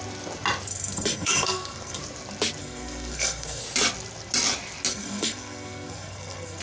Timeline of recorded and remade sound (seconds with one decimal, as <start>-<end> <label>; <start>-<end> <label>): 0.0-0.7 recorded; 0.7-2.0 remade; 2.0-2.6 recorded; 2.6-3.6 remade; 3.6-4.9 recorded; 4.9-6.6 remade